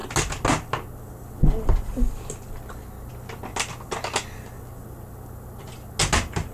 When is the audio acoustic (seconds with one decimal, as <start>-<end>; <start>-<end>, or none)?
0.0-6.5